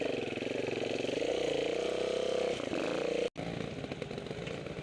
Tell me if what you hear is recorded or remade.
recorded